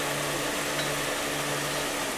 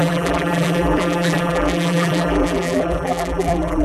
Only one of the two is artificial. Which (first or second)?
second